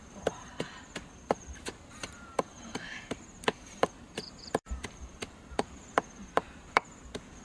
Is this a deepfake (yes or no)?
yes